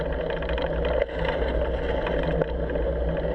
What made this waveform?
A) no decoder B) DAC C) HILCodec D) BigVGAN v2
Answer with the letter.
A